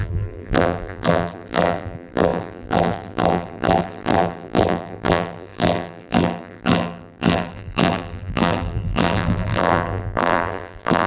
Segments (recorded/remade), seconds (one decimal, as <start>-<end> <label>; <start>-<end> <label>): 0.0-11.1 remade